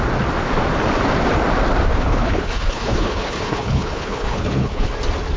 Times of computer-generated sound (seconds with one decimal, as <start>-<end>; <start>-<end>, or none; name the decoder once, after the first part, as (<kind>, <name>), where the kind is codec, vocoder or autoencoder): 1.9-4.9 (codec, HILCodec)